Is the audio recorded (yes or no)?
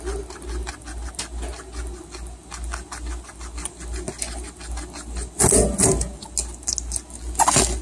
yes